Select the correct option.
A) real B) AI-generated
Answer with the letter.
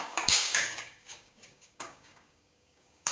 B